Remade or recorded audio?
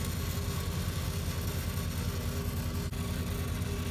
recorded